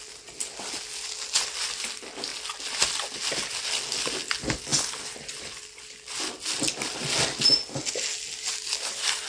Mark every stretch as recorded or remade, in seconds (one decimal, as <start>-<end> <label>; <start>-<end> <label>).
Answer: 0.0-9.3 recorded